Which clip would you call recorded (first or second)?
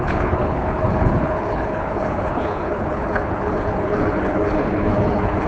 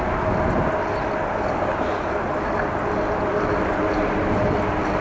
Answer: second